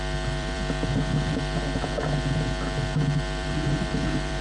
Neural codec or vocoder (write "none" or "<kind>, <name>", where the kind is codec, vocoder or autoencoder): vocoder, BigVGAN v2